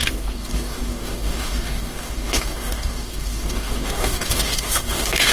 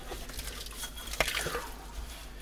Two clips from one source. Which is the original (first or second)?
second